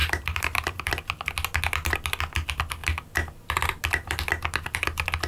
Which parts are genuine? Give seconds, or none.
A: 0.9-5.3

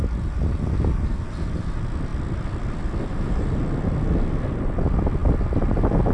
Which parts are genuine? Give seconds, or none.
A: 0.0-6.1

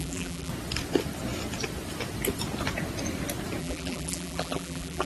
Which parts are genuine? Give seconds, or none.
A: 0.5-3.6

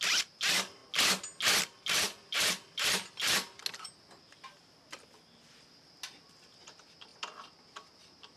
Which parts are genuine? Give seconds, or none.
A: 0.8-1.6; 3.6-4.2

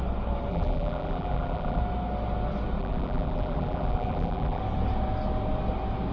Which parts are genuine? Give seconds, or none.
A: 0.0-0.5; 1.8-2.8; 4.6-6.1

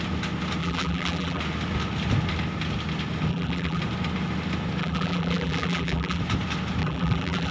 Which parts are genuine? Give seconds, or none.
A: 0.0-0.6; 1.4-3.3; 3.8-4.8; 6.2-6.8

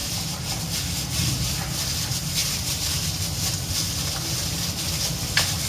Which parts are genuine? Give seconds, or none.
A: 0.6-5.7